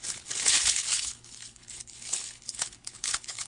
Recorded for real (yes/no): no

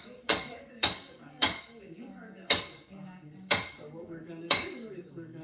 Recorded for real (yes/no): no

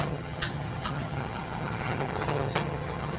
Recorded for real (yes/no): no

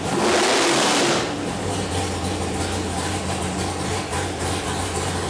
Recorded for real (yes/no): yes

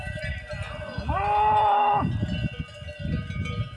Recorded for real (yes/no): yes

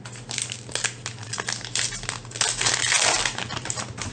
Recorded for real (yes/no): yes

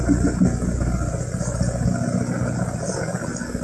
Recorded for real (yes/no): yes